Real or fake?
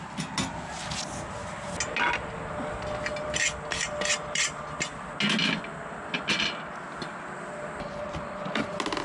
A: real